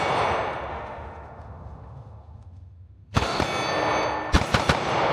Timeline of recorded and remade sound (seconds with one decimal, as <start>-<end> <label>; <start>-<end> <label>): 0.0-0.7 recorded; 0.7-3.4 remade; 3.4-5.1 recorded